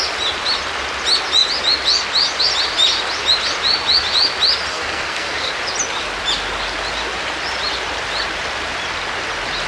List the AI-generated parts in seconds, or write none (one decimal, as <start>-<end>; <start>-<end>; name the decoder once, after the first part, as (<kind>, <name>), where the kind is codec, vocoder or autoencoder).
4.7-5.5 (codec, SNAC)